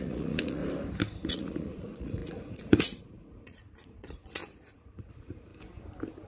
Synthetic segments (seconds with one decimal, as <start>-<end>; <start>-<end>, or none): 0.0-0.6; 1.3-5.5